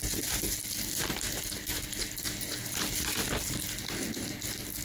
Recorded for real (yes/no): yes